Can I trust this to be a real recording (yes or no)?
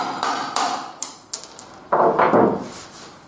yes